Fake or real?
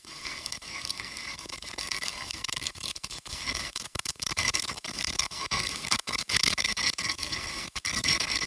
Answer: fake